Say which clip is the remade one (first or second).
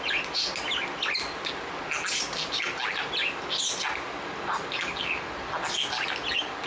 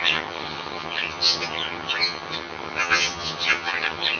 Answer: second